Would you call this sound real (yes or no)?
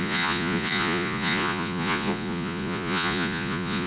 no